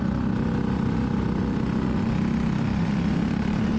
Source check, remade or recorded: recorded